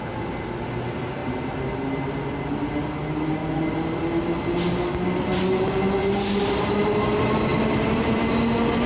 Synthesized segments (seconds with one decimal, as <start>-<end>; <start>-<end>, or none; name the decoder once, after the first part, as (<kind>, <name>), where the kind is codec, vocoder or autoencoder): 7.5-8.2 (vocoder, BigVGAN v2)